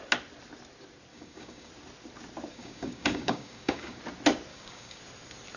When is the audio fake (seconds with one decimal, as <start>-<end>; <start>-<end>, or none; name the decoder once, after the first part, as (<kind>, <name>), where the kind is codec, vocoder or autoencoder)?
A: 1.1-1.7 (codec, DAC); 2.5-4.0; 4.5-5.0